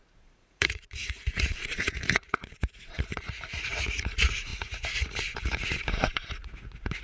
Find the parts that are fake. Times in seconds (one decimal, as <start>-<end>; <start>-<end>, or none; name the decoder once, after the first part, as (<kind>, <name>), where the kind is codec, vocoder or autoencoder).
0.0-7.0 (vocoder, Vocos)